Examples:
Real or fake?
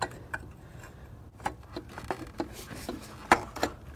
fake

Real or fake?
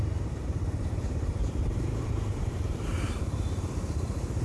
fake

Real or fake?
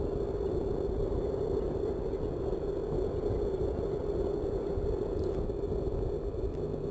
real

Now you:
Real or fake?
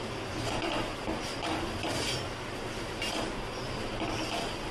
real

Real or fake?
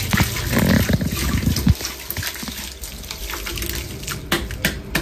real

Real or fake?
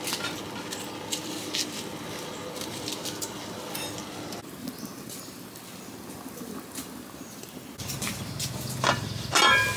real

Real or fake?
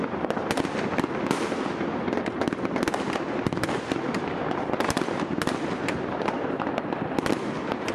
real